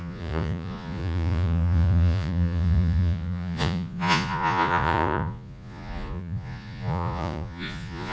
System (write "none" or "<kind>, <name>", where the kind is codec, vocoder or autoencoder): vocoder, Vocos